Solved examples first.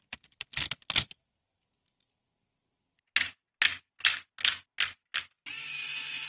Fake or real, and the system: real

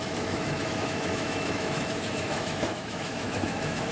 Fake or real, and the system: fake, autoencoder, DAC-VAE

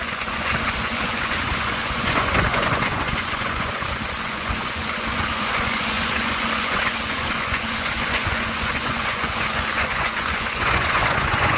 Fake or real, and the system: fake, vocoder, Vocos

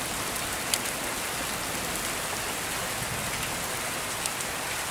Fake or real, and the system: real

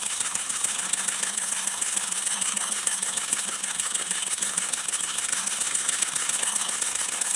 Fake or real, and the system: fake, codec, SNAC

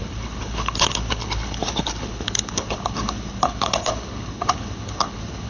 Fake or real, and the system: fake, codec, HILCodec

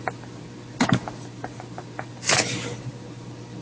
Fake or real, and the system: real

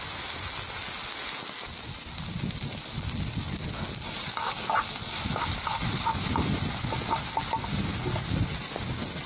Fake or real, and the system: real